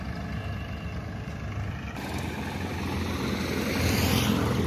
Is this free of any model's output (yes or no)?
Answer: yes